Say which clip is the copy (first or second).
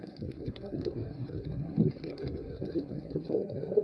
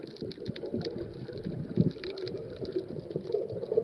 first